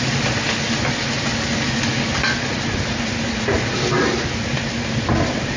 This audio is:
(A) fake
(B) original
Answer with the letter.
B